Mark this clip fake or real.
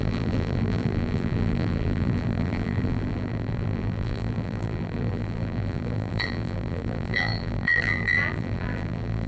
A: fake